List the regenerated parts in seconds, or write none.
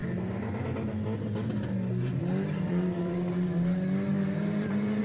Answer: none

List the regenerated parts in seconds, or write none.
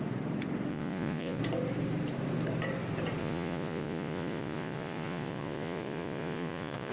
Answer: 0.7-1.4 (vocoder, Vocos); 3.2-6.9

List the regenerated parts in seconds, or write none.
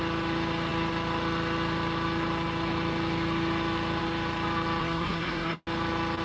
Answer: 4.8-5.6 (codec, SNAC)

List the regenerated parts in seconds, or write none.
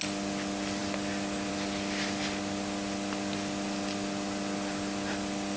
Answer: none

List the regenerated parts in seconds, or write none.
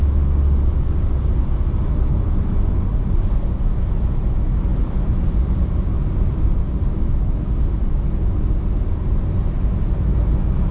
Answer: 4.7-5.8 (vocoder, BigVGAN v2)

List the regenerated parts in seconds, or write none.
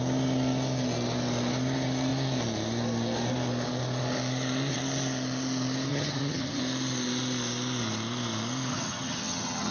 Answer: 5.9-6.6 (vocoder, HiFi-GAN); 8.7-9.7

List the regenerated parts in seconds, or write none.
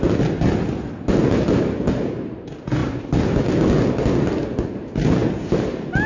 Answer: none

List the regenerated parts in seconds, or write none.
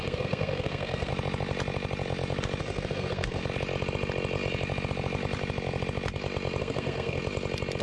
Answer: 0.0-1.1 (codec, SNAC); 2.6-3.4; 6.6-7.2